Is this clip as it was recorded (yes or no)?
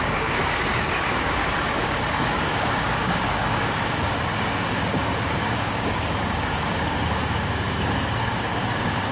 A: no